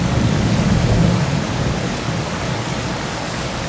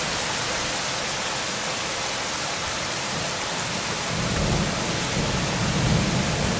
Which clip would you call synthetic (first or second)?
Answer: first